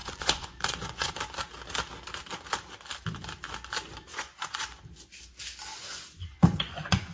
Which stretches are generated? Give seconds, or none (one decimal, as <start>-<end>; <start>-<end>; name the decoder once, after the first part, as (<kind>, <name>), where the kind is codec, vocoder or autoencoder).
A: 0.0-1.1 (vocoder, Vocos); 4.1-4.8; 5.7-7.1